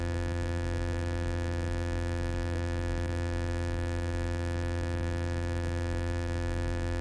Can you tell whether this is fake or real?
fake